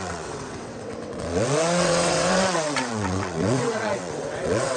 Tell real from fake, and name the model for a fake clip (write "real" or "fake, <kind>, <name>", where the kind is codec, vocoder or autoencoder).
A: fake, vocoder, WaveNeXt